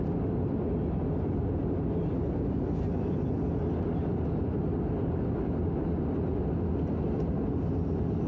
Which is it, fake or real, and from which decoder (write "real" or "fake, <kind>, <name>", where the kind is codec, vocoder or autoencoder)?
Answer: real